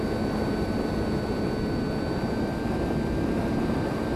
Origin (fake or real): real